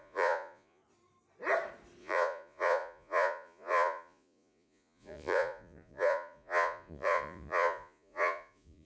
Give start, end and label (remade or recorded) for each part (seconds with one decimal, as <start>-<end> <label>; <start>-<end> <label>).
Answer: 0.0-0.8 remade; 0.8-2.0 recorded; 2.0-8.9 remade